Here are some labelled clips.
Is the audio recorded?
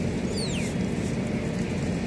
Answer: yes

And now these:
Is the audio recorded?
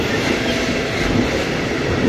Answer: yes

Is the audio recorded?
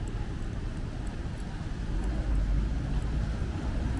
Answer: yes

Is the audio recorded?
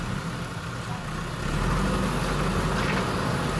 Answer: yes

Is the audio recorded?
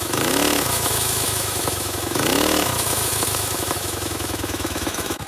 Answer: no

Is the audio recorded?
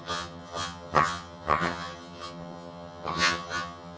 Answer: no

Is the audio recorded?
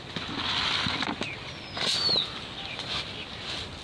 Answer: yes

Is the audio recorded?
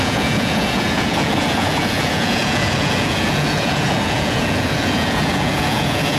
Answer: no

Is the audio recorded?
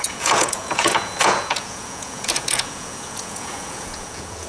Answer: no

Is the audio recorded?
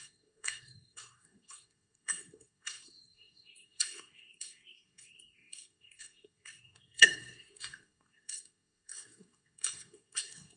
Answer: no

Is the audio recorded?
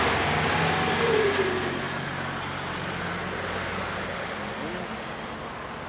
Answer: yes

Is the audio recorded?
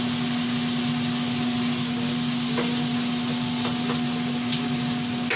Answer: yes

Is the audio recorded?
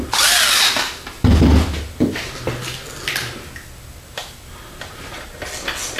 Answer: yes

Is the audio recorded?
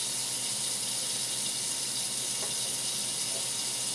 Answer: yes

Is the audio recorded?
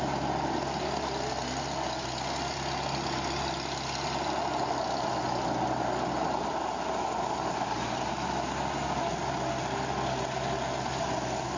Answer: yes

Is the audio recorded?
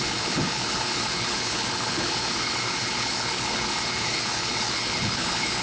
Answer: no